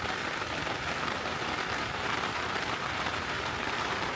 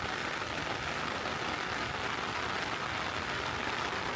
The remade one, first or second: first